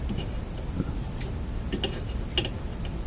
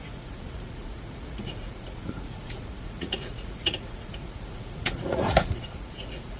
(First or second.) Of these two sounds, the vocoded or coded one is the second